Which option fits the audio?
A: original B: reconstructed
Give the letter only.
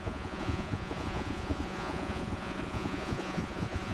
B